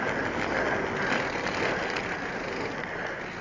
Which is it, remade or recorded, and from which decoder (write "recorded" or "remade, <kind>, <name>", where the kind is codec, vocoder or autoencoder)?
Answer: recorded